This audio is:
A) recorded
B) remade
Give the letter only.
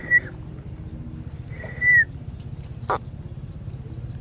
A